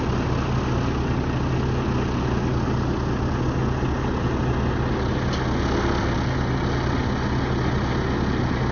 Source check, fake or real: real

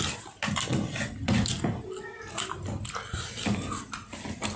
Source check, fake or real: real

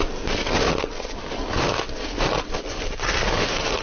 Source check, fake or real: real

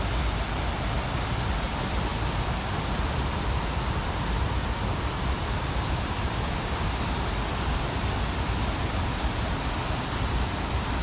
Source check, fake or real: real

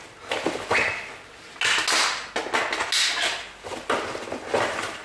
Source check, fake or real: real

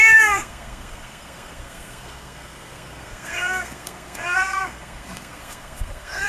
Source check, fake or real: fake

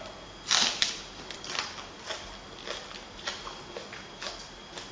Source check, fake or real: real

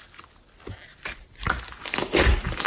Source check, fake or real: real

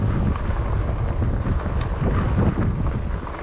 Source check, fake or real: real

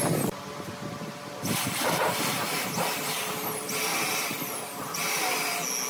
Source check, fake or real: real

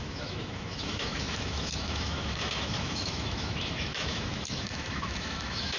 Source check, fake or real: fake